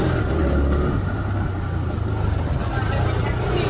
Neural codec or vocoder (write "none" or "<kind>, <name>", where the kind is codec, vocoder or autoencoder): none